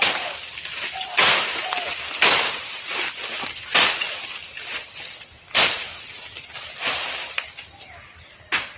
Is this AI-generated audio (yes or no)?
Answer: yes